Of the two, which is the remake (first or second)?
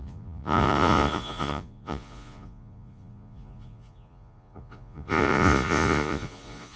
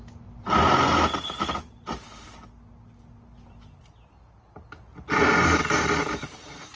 first